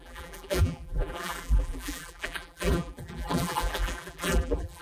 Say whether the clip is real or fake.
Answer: fake